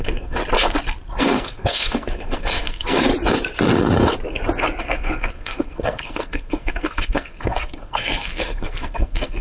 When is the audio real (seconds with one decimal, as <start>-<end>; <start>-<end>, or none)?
0.4-1.2; 3.1-4.8